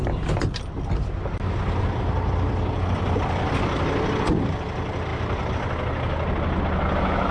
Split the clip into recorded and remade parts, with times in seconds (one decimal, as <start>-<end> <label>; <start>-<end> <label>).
0.0-7.3 recorded